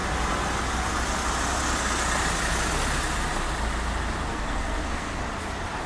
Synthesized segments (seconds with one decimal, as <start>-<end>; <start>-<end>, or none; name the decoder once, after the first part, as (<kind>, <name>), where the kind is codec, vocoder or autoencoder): 4.3-5.2 (codec, SNAC)